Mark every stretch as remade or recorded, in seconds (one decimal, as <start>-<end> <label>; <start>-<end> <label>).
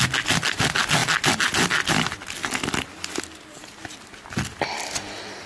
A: 0.0-5.5 recorded